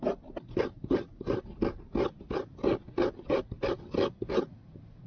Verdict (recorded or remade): recorded